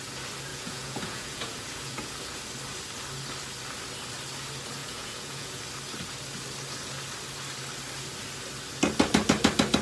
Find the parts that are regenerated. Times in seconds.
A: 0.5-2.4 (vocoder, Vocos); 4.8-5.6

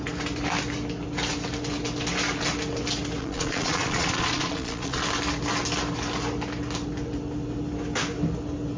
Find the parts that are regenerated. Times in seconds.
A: 3.2-5.0 (vocoder, Vocos)

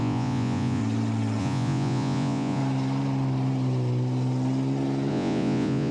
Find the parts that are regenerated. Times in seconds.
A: 0.0-0.8 (vocoder, Vocos); 1.4-2.6; 5.1-5.9

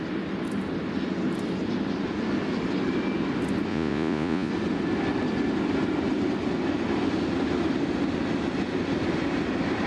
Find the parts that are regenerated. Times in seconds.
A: 3.7-4.5 (vocoder, Vocos)

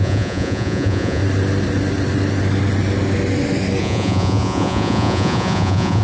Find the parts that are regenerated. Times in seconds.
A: 0.0-1.2 (vocoder, Vocos); 3.8-6.0

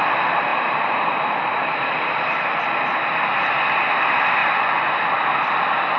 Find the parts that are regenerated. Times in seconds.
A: 4.4-4.9 (vocoder, Vocos)